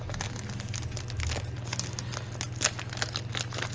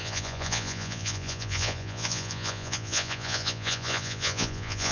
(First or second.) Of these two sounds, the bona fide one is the first